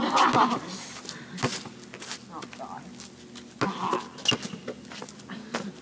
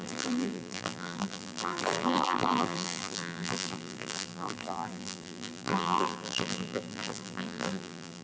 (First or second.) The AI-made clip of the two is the second